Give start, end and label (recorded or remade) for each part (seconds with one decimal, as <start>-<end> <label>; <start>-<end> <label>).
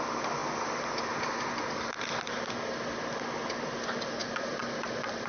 0.0-0.4 recorded; 0.4-2.1 remade; 2.1-4.2 recorded; 4.2-5.3 remade